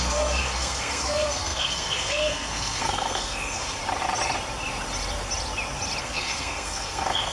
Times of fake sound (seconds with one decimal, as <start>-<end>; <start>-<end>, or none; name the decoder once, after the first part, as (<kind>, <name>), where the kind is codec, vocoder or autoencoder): 0.0-3.8 (codec, SNAC); 6.0-7.3